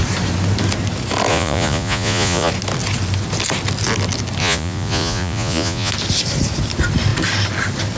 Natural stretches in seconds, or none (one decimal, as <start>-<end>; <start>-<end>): 0.0-1.3; 2.5-4.4; 5.9-8.0